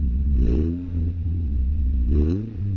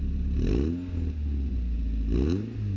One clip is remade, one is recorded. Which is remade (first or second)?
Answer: first